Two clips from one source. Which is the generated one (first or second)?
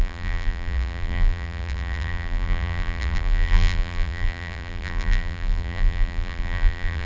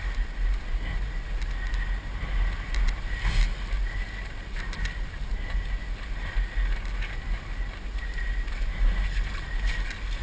first